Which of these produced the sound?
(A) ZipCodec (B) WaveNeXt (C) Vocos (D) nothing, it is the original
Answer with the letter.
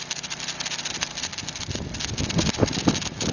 D